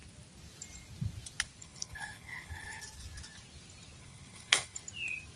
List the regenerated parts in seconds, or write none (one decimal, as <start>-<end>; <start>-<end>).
1.6-2.8; 4.0-4.8